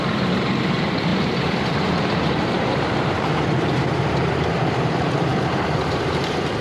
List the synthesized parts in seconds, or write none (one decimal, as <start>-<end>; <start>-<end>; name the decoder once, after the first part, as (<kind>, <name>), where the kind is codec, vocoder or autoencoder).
0.0-6.6 (vocoder, BigVGAN v2)